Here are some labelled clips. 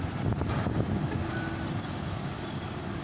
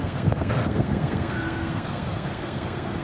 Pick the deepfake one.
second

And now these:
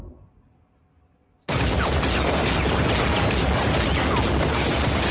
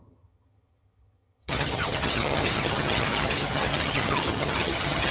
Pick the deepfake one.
second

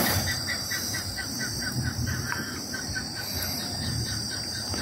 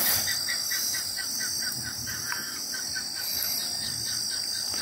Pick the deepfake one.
first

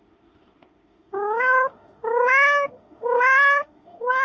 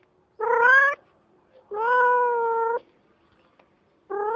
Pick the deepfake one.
first